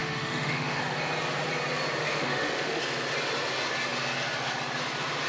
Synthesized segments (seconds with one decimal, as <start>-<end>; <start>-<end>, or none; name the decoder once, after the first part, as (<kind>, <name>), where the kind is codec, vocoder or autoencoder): 0.0-0.8 (autoencoder, DAC-VAE); 2.0-2.8